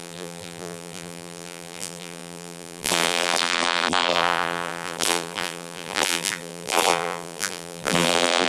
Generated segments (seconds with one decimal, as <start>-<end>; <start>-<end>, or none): 0.0-8.5